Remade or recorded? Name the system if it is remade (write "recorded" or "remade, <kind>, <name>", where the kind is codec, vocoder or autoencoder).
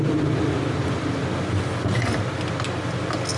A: recorded